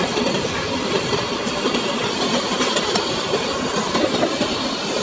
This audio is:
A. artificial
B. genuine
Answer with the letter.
B